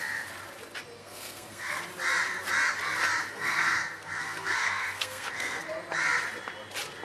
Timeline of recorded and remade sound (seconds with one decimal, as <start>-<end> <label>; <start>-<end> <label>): 0.0-1.0 recorded; 1.0-1.8 remade; 1.8-3.3 recorded; 3.3-5.6 remade; 5.6-7.0 recorded